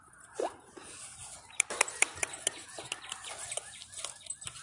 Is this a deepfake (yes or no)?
no